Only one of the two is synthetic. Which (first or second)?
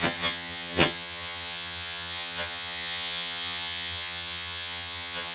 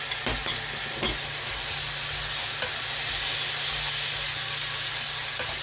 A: first